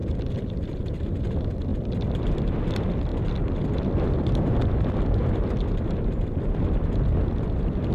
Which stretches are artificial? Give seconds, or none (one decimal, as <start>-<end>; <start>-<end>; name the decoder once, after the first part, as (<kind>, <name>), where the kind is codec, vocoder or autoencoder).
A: 0.8-3.1 (vocoder, BigVGAN v2); 4.1-5.2; 5.8-7.9